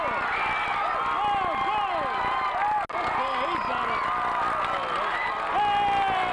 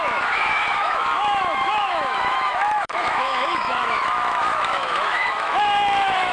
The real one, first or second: first